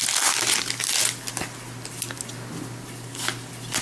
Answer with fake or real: real